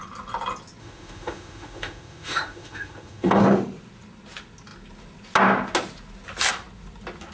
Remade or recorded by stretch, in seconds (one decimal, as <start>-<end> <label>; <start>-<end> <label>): 0.0-0.8 recorded; 0.8-3.4 remade; 3.4-7.3 recorded